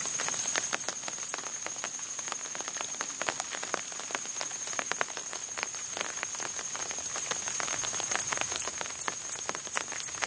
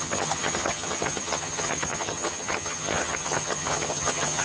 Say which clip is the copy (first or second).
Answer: second